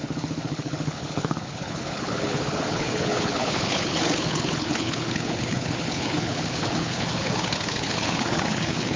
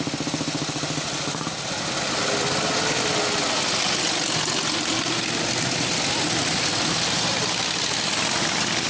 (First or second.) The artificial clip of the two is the first